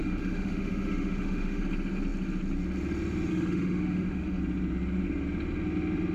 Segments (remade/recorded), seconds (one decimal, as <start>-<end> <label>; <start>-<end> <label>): 0.0-1.6 remade; 1.6-3.3 recorded; 3.3-4.4 remade; 4.4-6.1 recorded